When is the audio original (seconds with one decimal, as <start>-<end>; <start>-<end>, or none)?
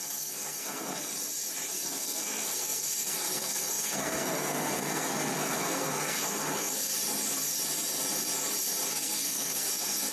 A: 1.1-1.7; 6.9-8.9